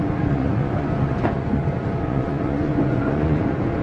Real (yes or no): no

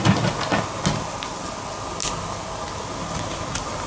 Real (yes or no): yes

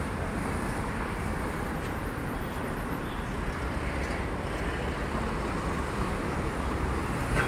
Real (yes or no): no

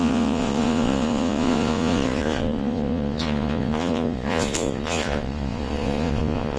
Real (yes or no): no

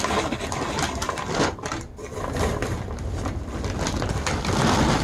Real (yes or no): yes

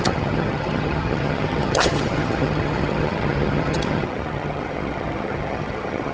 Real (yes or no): no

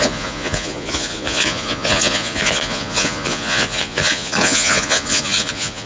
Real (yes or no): no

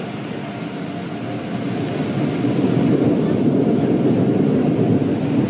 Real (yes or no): yes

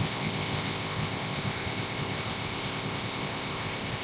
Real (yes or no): no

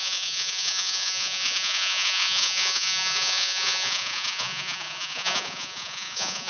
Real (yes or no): no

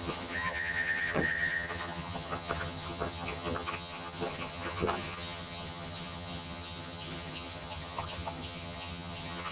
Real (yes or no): no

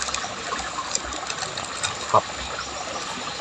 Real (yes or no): yes